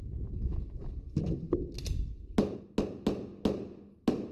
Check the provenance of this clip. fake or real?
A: real